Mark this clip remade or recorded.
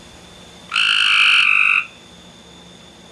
recorded